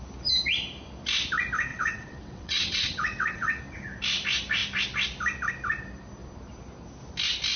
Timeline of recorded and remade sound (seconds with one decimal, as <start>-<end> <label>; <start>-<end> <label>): 0.0-1.7 recorded; 1.7-3.6 remade; 3.6-7.6 recorded